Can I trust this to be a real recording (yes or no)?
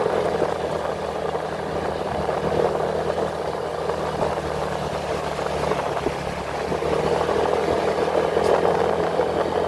yes